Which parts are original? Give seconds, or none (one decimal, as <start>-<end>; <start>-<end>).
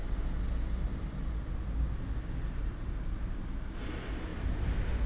0.0-2.6; 3.7-4.3